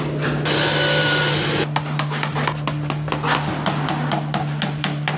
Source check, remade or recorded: recorded